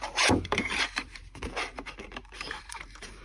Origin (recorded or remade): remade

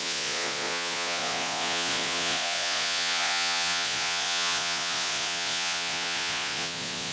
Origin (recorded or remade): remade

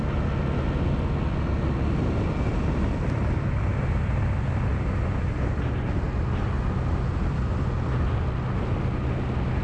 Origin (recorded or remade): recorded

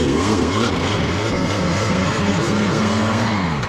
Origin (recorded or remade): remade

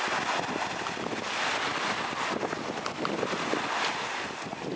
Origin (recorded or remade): recorded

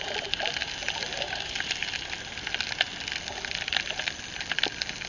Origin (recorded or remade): recorded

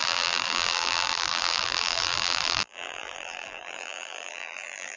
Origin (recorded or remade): remade